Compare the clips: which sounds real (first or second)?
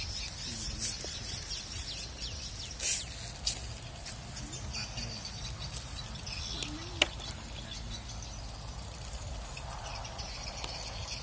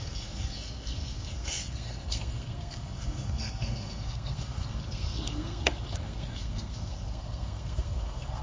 first